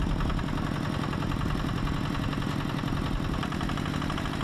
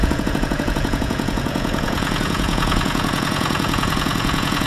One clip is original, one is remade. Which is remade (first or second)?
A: second